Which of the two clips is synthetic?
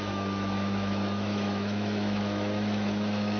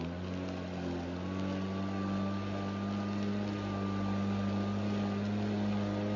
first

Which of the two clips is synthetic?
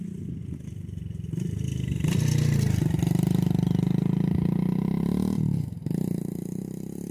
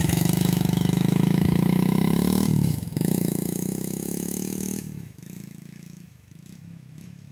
second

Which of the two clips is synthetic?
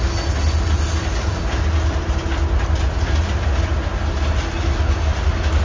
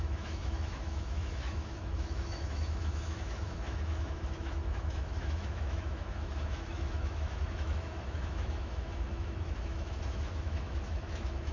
second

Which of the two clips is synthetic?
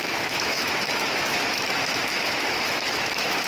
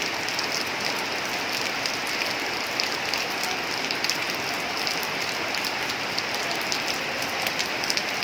first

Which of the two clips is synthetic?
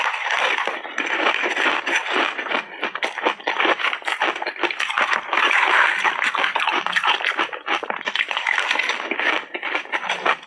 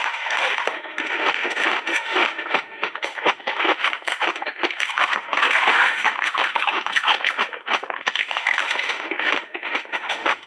second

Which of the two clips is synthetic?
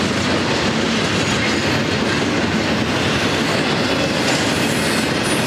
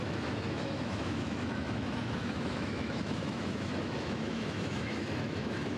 second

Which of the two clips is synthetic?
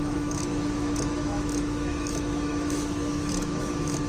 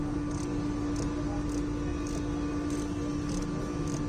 first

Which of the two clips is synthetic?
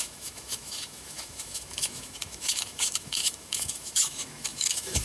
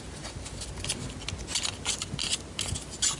first